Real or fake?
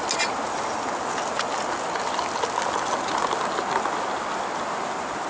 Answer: real